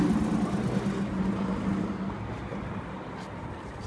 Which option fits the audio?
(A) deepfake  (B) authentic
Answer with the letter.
B